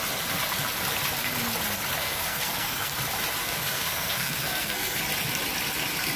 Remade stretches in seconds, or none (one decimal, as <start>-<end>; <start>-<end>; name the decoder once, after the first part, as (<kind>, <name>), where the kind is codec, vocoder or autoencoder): 2.0-2.9 (codec, SNAC); 3.4-5.0